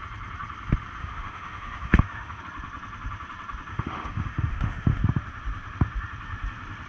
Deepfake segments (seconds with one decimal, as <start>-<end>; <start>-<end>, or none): 1.0-2.4; 3.7-5.0